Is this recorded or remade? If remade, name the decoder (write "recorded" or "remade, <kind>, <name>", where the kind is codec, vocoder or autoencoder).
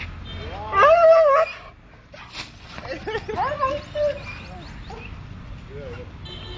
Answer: recorded